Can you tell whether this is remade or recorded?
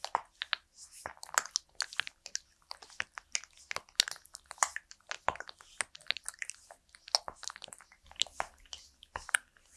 recorded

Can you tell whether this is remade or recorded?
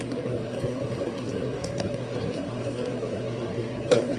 remade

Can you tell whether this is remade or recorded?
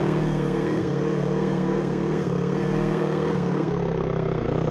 remade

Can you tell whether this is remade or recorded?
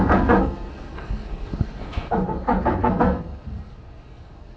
remade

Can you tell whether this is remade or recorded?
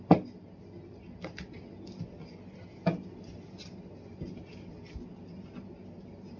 recorded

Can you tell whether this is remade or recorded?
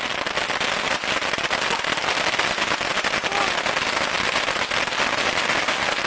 recorded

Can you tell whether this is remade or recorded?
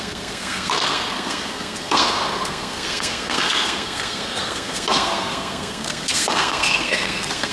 remade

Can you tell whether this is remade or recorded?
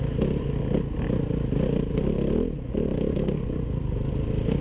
recorded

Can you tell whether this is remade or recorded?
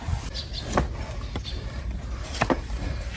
recorded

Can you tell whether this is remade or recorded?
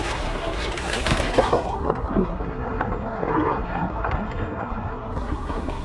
remade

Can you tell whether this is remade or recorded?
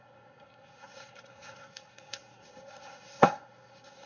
remade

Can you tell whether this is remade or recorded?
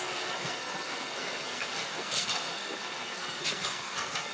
remade